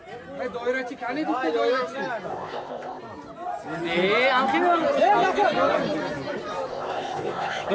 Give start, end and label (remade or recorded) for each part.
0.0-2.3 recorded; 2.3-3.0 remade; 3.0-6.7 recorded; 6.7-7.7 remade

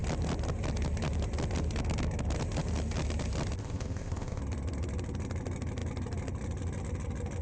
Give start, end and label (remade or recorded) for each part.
0.0-3.6 recorded; 3.6-4.4 remade; 4.4-7.4 recorded

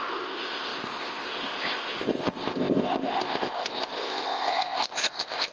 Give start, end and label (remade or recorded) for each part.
0.0-5.5 remade

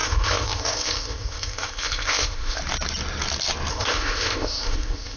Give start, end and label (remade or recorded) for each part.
0.0-2.6 remade; 2.6-3.7 recorded; 3.7-5.2 remade

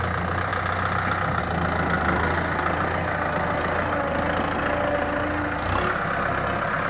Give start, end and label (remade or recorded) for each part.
0.0-6.9 recorded

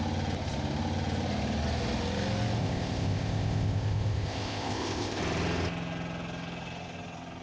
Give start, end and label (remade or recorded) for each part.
0.0-2.6 recorded; 2.6-5.2 remade; 5.2-7.4 recorded

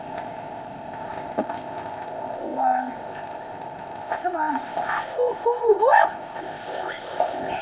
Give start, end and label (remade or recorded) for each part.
0.0-7.6 remade